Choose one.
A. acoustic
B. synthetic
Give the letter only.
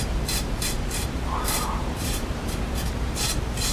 B